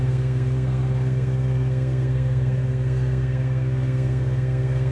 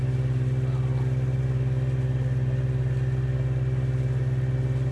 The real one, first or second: second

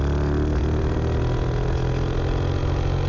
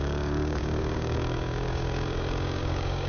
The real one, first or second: first